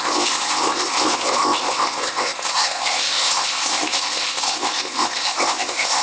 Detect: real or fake fake